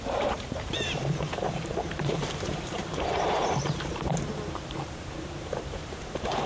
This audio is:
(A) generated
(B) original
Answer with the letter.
A